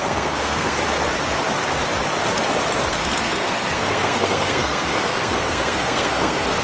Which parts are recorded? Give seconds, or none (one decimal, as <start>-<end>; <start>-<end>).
0.8-2.9